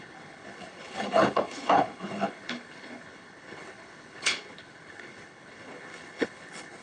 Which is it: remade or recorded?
remade